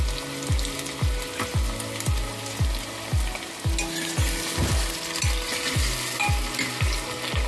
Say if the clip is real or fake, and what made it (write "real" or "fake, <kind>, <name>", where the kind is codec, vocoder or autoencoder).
real